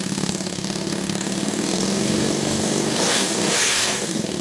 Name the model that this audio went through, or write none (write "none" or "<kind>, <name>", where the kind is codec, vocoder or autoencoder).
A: codec, DAC